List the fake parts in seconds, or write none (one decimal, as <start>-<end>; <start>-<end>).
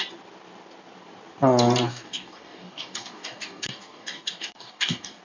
1.9-5.2